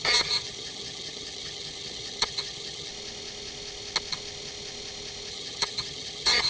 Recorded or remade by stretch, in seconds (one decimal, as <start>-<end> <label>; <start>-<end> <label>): 0.0-2.9 remade; 2.9-5.3 recorded; 5.3-6.5 remade